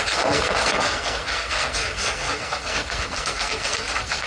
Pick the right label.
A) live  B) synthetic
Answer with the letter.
B